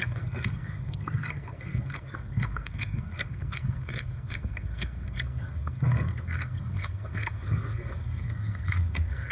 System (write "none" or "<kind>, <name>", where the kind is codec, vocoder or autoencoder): codec, SNAC